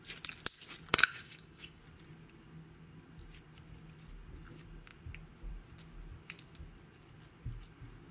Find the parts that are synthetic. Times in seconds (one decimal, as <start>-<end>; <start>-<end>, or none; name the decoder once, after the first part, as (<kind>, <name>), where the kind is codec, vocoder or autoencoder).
0.9-1.8 (codec, DAC)